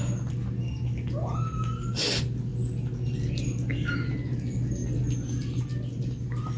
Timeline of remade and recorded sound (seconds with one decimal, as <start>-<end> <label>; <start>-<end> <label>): 0.0-6.6 recorded